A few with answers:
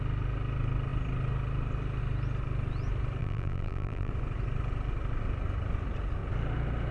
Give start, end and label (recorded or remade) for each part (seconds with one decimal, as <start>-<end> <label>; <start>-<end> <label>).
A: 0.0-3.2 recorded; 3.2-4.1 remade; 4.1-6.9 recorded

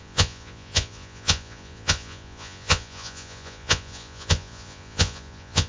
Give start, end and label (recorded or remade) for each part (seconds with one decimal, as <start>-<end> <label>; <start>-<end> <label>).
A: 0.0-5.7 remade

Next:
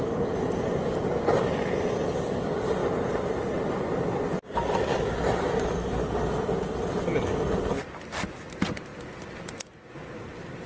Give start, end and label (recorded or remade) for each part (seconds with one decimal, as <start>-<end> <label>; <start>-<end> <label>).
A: 0.0-10.7 recorded

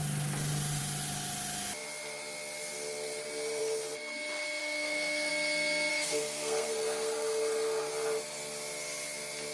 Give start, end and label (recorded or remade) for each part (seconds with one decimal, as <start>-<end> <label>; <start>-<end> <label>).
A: 0.0-4.6 recorded; 4.6-5.3 remade; 5.3-5.9 recorded; 5.9-7.9 remade; 7.9-9.5 recorded

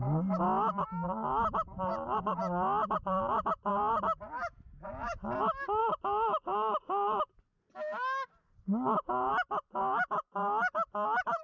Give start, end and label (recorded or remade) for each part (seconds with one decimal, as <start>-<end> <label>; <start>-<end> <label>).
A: 0.0-11.4 recorded

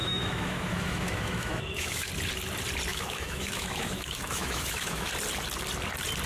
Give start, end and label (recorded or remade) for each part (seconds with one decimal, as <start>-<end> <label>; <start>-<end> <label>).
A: 0.0-2.1 remade; 2.1-2.9 recorded; 2.9-5.1 remade; 5.1-6.3 recorded